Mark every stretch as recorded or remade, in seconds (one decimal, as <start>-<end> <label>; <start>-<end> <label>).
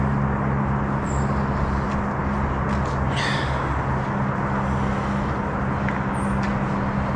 0.0-7.2 recorded